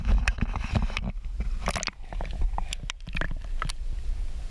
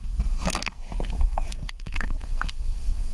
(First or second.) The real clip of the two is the first